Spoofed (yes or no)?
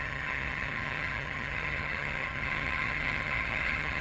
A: yes